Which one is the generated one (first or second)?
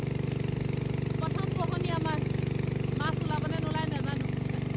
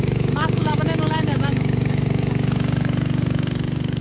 second